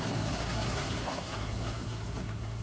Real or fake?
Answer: fake